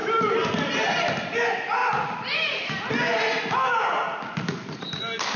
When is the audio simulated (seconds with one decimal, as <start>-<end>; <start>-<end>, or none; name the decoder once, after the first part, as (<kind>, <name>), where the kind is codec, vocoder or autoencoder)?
0.0-0.9 (vocoder, BigVGAN v2); 1.8-2.8